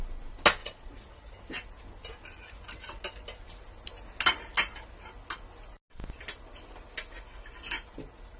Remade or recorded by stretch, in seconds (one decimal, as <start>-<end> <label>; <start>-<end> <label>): 0.0-0.6 recorded; 0.6-1.3 remade; 1.3-8.4 recorded